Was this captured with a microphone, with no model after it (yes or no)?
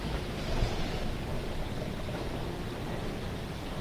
yes